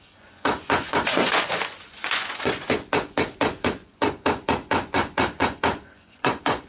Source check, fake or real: fake